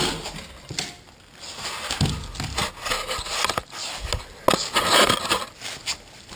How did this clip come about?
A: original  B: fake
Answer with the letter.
A